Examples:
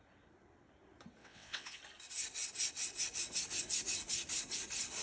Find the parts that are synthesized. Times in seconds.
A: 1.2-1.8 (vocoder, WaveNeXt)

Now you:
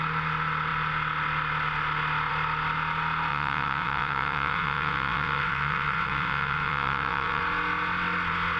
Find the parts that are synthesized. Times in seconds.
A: 3.3-7.4 (vocoder, WaveNeXt)